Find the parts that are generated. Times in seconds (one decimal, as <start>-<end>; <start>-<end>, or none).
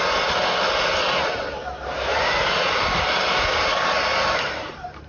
1.6-5.1